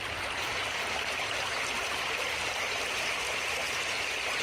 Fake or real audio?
real